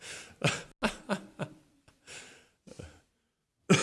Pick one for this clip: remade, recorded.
recorded